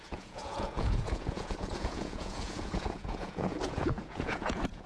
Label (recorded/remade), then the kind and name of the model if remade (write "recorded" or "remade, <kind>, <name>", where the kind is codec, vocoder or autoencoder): remade, vocoder, Vocos